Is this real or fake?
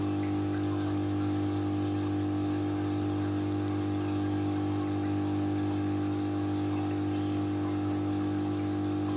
real